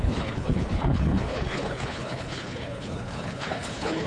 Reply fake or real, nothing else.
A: fake